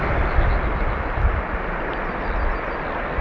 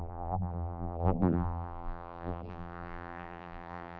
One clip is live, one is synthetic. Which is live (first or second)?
first